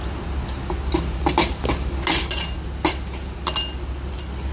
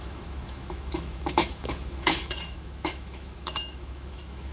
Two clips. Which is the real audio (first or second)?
first